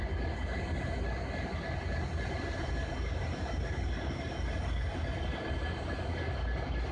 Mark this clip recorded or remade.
recorded